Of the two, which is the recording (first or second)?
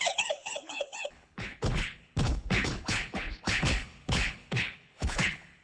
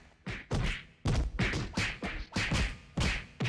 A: second